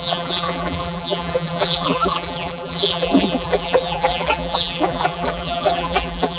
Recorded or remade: remade